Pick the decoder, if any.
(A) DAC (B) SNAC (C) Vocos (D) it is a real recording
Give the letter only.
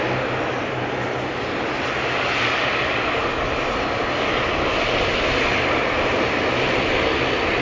D